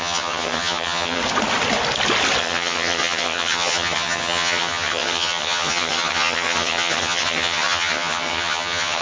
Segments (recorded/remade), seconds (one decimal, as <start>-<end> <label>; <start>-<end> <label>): 0.0-1.2 remade; 1.2-2.4 recorded; 2.4-9.0 remade